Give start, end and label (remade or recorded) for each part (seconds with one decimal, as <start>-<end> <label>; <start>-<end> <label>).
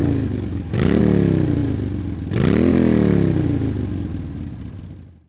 0.0-1.0 remade; 1.0-5.3 recorded